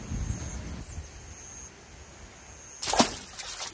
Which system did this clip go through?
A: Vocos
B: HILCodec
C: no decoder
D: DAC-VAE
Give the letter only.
C